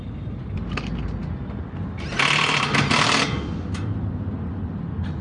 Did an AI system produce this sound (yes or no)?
no